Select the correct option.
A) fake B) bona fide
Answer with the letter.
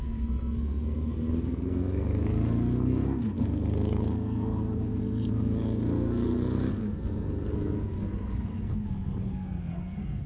A